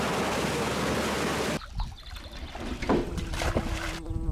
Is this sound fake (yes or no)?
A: no